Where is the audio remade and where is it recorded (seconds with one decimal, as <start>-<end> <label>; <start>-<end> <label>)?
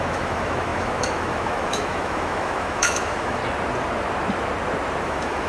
0.0-3.4 remade; 3.4-5.0 recorded; 5.0-5.5 remade